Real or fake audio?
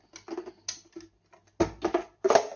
real